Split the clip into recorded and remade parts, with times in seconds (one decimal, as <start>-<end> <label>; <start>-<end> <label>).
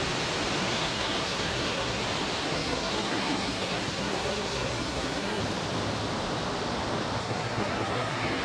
0.0-0.6 recorded; 0.6-2.0 remade; 2.0-2.4 recorded; 2.4-5.4 remade; 5.4-7.2 recorded; 7.2-8.4 remade